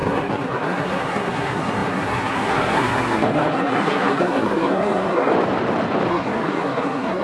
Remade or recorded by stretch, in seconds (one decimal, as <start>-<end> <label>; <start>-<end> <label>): 0.0-5.3 remade; 5.3-6.1 recorded; 6.1-7.2 remade